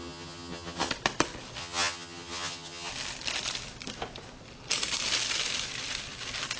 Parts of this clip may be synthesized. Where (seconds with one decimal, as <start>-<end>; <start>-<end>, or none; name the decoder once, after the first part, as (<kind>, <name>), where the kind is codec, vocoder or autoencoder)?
0.0-0.9 (vocoder, HiFi-GAN); 1.6-2.9